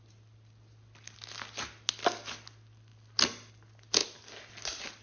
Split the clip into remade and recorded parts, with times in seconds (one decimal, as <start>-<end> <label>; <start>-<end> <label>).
0.0-5.0 recorded